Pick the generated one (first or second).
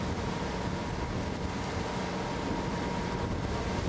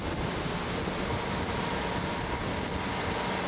second